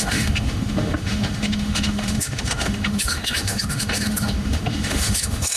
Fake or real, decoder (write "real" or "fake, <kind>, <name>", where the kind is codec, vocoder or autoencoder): fake, autoencoder, DAC-VAE